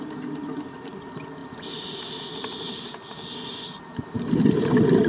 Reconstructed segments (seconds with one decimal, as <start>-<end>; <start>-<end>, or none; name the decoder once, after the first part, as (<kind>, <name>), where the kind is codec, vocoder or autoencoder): none